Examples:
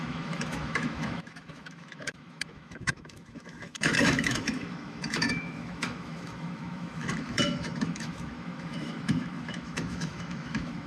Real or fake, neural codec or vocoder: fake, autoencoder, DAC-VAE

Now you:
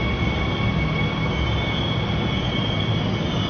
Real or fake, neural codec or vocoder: real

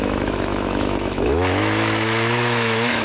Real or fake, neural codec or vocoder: fake, autoencoder, DAC-VAE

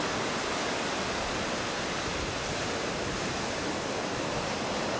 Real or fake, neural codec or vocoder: real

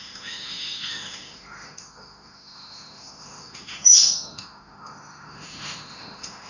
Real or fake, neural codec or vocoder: fake, autoencoder, DAC-VAE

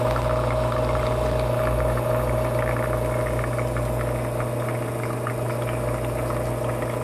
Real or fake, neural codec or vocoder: real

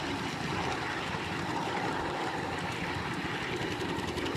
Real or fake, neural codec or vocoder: real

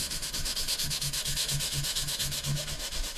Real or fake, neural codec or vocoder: fake, autoencoder, DAC-VAE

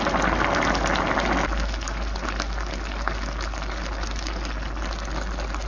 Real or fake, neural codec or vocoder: real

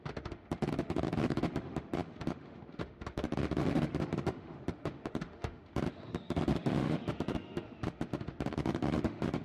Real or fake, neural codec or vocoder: fake, autoencoder, DAC-VAE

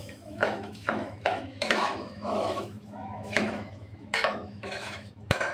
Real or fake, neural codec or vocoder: fake, autoencoder, DAC-VAE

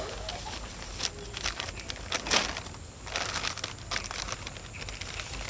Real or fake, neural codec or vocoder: real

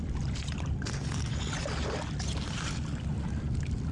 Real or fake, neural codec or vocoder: real